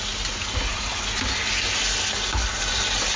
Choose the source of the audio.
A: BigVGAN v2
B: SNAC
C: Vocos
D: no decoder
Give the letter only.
D